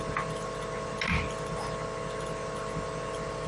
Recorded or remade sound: recorded